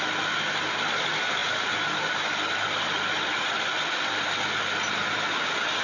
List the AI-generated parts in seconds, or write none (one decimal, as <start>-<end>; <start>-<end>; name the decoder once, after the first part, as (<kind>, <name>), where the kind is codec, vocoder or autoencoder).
none